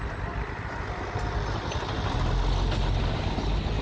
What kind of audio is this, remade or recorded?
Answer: recorded